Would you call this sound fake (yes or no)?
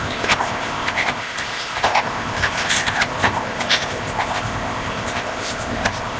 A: yes